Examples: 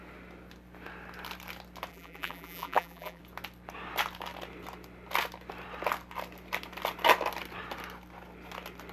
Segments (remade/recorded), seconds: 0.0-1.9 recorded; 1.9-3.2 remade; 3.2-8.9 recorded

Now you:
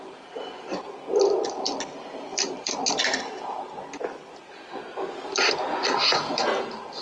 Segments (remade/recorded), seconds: 0.0-2.3 recorded; 2.3-3.3 remade; 3.3-7.0 recorded

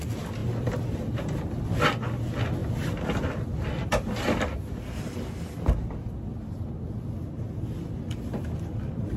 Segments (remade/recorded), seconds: 0.0-9.2 recorded

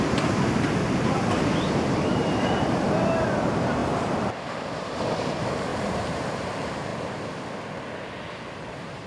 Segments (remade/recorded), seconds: 0.0-3.8 remade; 3.8-5.0 recorded; 5.0-6.9 remade; 6.9-8.7 recorded; 8.7-9.1 remade

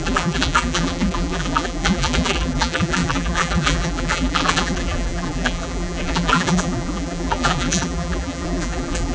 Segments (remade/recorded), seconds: 0.0-9.1 remade

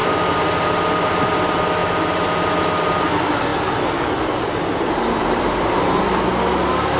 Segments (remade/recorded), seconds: 0.0-3.5 remade; 3.5-4.8 recorded; 4.8-6.3 remade; 6.3-7.0 recorded